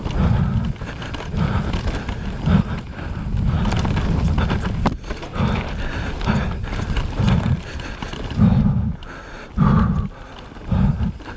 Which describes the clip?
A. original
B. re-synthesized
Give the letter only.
A